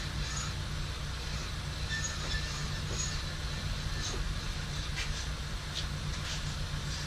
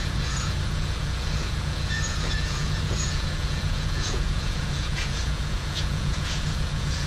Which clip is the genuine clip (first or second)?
first